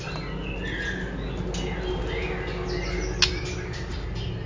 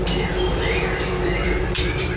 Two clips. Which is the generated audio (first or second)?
second